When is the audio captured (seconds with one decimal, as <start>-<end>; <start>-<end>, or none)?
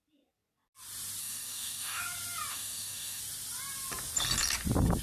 0.0-1.2; 2.0-2.5; 3.2-5.0